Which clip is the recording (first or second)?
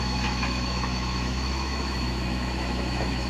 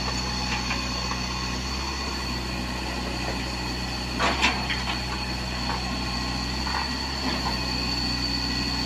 second